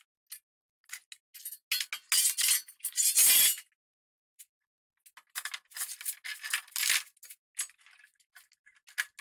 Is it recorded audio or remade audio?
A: recorded